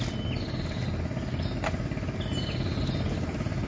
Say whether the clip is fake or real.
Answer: real